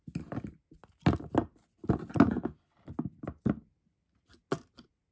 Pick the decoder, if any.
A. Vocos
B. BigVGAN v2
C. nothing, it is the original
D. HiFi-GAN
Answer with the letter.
C